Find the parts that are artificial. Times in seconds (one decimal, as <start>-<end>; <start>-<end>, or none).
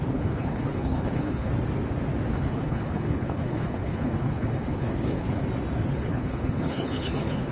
0.0-1.5; 2.3-5.4; 5.9-7.5